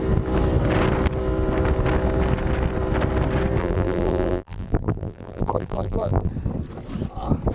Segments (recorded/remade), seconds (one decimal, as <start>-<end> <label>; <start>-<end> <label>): 0.0-3.6 recorded; 3.6-6.3 remade; 6.3-7.5 recorded